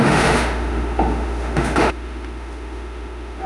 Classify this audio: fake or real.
fake